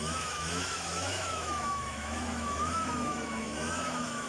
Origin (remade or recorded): remade